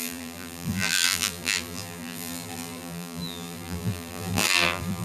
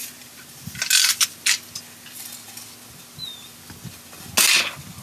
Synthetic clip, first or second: first